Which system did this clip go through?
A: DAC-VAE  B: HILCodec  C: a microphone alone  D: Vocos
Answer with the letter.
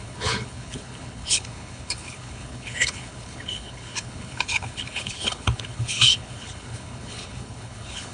B